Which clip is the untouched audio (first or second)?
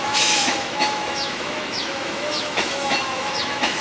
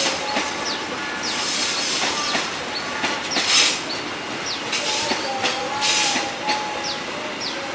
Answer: second